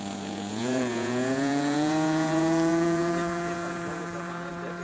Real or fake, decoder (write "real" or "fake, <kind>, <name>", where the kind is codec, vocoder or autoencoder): fake, vocoder, Vocos